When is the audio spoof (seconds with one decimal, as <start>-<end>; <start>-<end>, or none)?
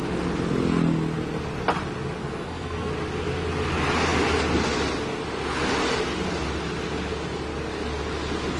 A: 2.2-2.9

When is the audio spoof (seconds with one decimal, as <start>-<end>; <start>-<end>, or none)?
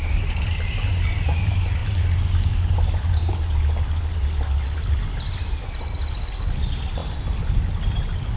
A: none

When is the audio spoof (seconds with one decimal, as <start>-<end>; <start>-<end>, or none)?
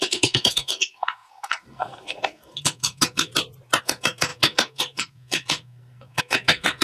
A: 0.0-3.3; 3.8-6.8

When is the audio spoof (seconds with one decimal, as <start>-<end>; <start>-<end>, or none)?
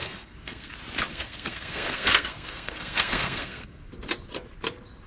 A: 0.0-0.7; 1.1-3.9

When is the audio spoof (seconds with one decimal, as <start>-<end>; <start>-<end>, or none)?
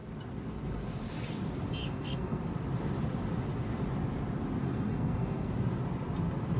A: 1.8-2.4; 4.6-5.5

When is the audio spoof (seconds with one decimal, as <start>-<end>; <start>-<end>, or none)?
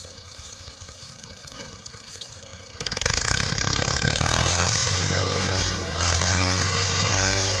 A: 0.0-7.6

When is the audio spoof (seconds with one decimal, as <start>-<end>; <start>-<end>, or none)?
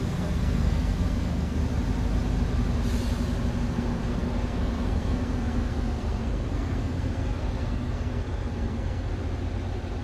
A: 0.0-1.6; 3.7-9.1